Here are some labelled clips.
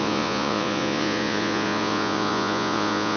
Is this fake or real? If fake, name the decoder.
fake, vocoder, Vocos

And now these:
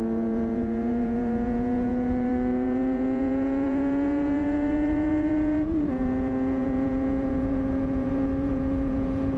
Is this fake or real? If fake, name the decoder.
fake, vocoder, Vocos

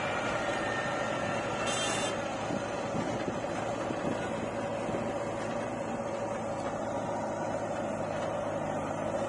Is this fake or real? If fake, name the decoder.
real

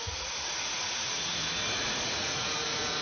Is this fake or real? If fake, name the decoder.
fake, vocoder, Vocos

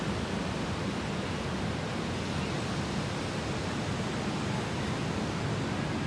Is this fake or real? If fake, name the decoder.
real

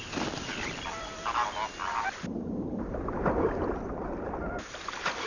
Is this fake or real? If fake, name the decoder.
real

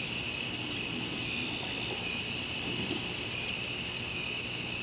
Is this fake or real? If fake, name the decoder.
real